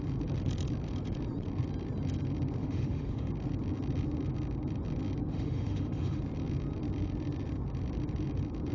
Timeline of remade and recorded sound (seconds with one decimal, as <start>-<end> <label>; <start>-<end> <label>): 0.0-2.6 recorded; 2.6-3.3 remade; 3.3-5.3 recorded; 5.3-6.2 remade; 6.2-8.7 recorded